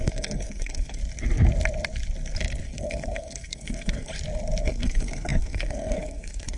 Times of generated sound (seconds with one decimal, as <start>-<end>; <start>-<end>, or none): 0.0-1.0; 2.6-4.1; 4.6-6.6